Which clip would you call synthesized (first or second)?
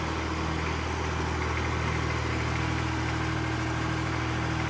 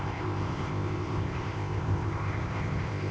second